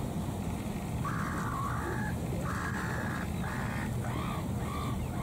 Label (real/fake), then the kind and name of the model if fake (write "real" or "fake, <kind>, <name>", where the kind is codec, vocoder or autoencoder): real